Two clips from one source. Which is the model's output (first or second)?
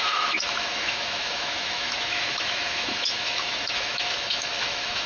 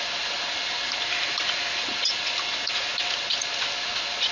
first